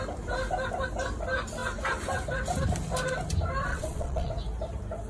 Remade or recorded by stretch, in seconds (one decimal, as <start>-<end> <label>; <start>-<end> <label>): 0.0-3.7 recorded; 3.7-4.3 remade; 4.3-5.1 recorded